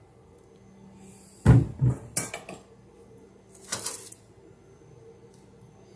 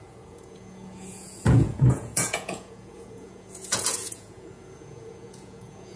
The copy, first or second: second